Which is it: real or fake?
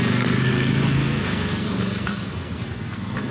fake